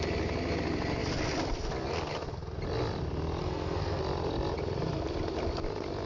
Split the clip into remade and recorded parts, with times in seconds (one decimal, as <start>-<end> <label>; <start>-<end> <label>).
0.0-3.4 recorded; 3.4-4.0 remade; 4.0-6.1 recorded